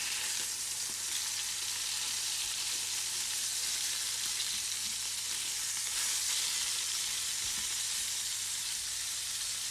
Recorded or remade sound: remade